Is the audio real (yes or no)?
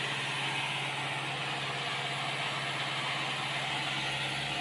yes